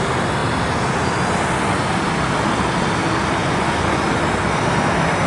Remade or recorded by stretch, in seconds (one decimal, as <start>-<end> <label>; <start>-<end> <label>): 0.0-3.4 recorded; 3.4-4.0 remade; 4.0-5.3 recorded